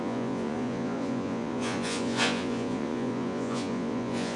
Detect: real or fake fake